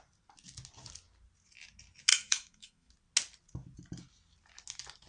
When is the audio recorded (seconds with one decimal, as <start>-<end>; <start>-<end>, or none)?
0.0-2.1; 2.9-5.1

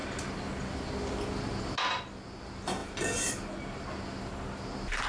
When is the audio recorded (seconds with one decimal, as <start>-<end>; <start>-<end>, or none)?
0.0-5.1

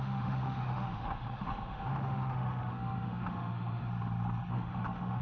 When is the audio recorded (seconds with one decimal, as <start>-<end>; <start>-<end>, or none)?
3.9-4.5

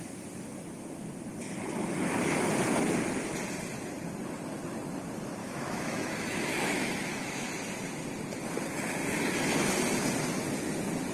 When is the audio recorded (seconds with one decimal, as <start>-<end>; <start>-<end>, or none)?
0.0-5.4; 7.5-11.1

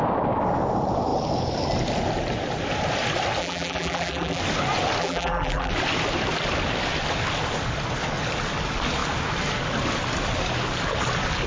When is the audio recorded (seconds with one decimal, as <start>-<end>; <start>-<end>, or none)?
0.0-3.4; 4.4-5.0; 5.7-11.5

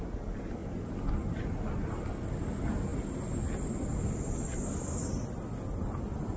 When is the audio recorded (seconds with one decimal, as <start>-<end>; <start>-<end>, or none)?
0.0-6.4